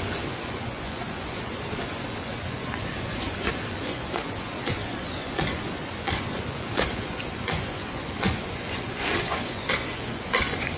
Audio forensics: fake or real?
fake